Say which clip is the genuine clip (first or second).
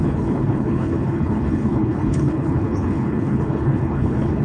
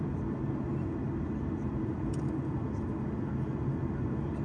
second